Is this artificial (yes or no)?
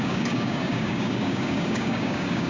yes